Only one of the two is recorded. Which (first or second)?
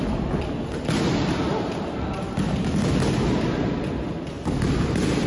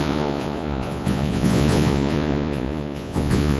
first